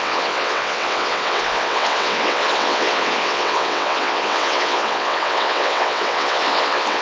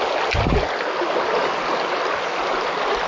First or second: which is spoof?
first